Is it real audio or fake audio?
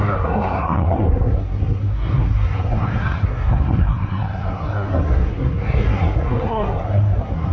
fake